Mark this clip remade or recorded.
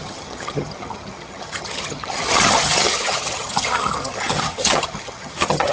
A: remade